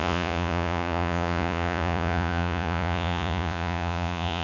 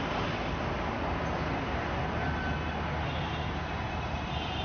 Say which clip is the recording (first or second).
second